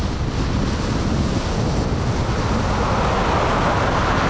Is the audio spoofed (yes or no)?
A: no